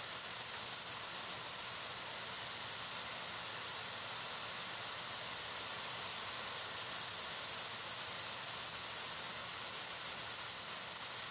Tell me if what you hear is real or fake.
real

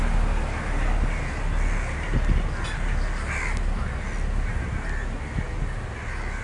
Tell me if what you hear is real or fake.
real